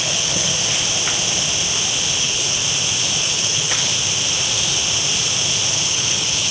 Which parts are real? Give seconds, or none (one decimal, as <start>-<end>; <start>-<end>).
0.5-2.2; 2.6-3.2; 3.9-5.7